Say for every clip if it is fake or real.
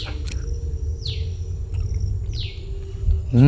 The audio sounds real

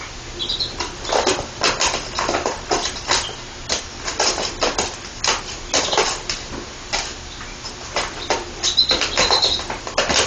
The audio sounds real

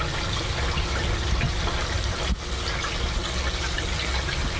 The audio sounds real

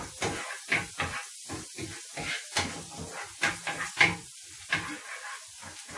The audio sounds real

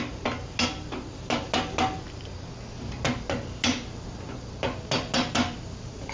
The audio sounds real